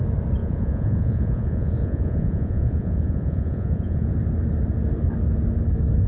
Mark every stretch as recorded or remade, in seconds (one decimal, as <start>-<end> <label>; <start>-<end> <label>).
0.0-0.4 recorded; 0.4-4.1 remade; 4.1-6.1 recorded